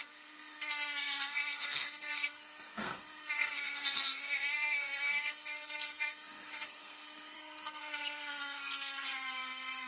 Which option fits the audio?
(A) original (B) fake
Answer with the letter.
B